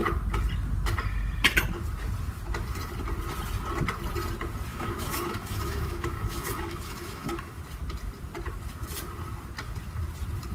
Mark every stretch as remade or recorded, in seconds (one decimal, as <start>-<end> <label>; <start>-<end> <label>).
0.0-4.7 recorded; 4.7-7.6 remade; 7.6-10.5 recorded